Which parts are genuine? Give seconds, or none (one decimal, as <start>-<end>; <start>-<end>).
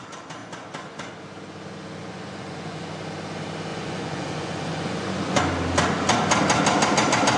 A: 0.0-0.4; 1.1-2.0; 2.9-3.7; 5.4-7.4